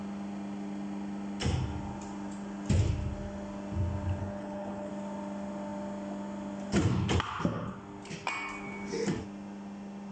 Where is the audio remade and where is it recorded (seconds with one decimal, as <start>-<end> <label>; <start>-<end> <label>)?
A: 0.0-4.2 recorded; 4.2-4.9 remade; 4.9-10.1 recorded